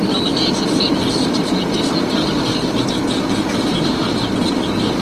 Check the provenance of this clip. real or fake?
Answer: real